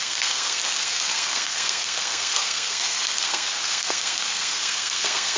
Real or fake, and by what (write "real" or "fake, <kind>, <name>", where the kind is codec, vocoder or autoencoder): fake, codec, SNAC